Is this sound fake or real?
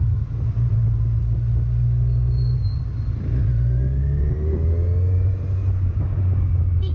real